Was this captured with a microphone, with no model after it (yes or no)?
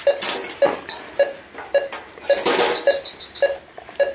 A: yes